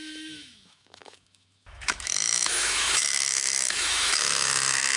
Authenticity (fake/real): fake